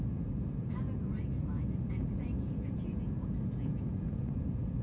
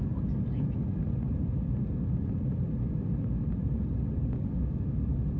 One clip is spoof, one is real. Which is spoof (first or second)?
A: first